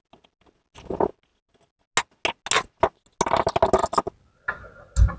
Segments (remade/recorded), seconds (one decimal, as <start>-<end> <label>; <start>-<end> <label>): 0.0-5.2 recorded